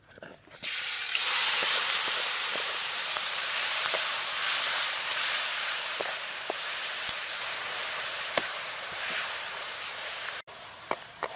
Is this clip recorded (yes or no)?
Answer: no